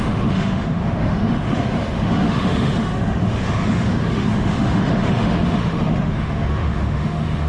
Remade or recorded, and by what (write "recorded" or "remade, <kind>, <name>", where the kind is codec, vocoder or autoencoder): remade, autoencoder, DAC-VAE